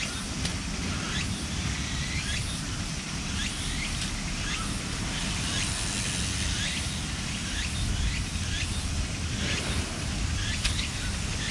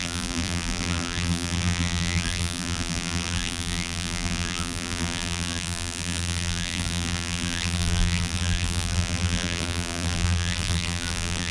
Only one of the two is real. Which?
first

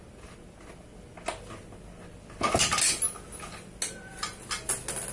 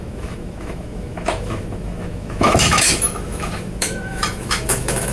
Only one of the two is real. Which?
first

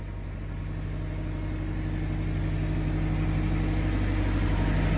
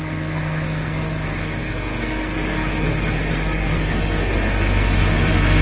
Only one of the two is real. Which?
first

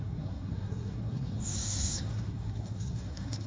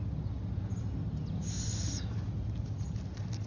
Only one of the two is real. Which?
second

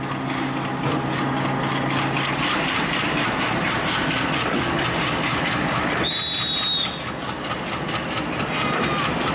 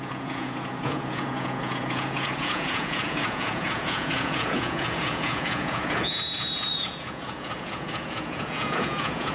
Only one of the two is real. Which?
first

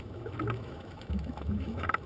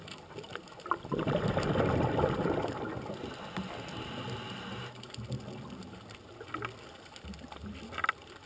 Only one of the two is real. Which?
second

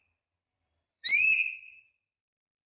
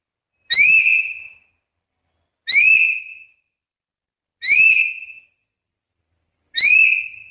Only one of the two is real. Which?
second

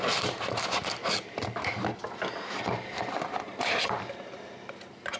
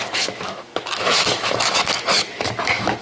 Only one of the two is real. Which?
first